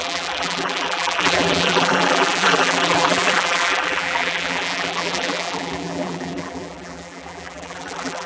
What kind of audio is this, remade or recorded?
remade